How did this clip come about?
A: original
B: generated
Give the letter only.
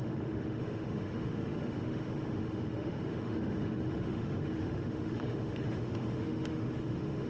B